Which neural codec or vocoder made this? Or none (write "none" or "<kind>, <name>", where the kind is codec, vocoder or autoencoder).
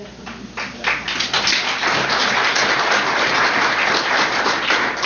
none